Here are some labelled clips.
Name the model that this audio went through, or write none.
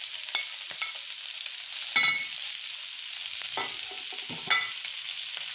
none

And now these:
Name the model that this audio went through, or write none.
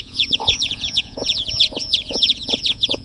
vocoder, Vocos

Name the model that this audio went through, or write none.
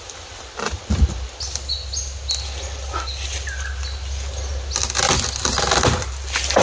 none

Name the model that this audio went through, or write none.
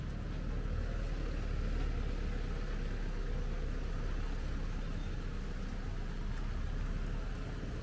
none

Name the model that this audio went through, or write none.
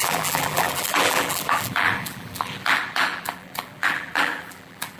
vocoder, BigVGAN v2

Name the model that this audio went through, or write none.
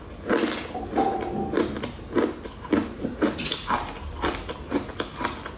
none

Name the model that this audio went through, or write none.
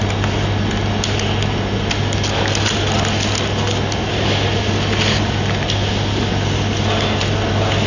none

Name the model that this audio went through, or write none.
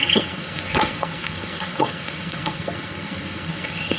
codec, SNAC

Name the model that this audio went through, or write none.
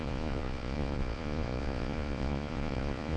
vocoder, Vocos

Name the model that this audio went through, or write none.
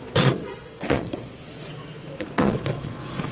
vocoder, Vocos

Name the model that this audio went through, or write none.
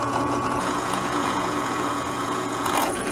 vocoder, Vocos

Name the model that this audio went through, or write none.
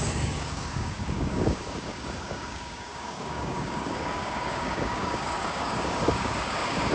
codec, DAC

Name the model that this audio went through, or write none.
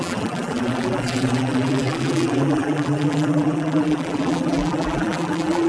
vocoder, BigVGAN v2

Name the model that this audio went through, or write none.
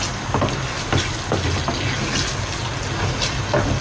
none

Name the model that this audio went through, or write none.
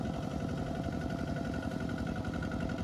none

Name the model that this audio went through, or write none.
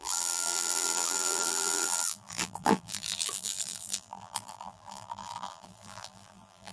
vocoder, BigVGAN v2